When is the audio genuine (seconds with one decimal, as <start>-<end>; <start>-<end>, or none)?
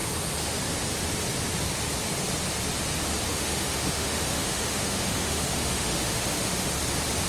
0.0-3.3; 6.7-7.3